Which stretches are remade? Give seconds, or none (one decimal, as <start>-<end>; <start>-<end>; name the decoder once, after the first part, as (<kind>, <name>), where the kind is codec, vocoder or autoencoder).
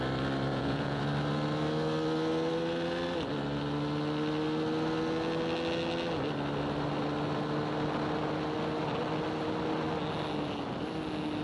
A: 0.5-1.0 (vocoder, Vocos)